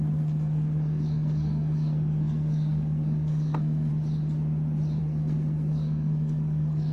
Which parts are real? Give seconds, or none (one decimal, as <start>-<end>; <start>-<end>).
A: 3.9-5.0